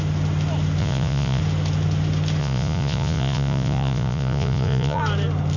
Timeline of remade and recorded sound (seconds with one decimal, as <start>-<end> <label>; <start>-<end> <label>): 0.0-0.8 recorded; 0.8-1.4 remade; 1.4-2.4 recorded; 2.4-5.0 remade; 5.0-5.6 recorded